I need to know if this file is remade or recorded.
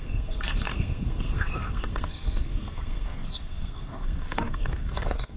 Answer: remade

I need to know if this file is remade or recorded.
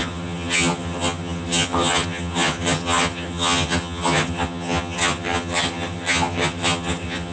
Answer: remade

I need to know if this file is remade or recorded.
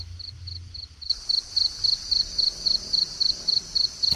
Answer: recorded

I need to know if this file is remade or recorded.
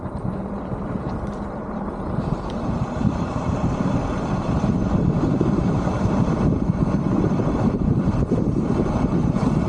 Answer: remade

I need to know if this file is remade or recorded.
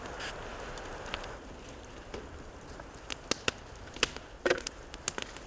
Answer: recorded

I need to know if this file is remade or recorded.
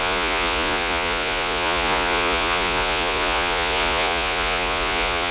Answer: remade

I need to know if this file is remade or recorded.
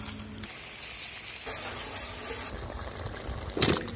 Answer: recorded